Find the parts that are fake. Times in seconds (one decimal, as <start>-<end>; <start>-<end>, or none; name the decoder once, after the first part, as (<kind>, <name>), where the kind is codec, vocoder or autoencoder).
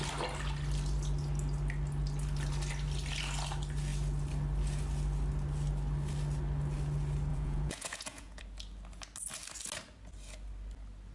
7.3-8.4 (vocoder, Vocos)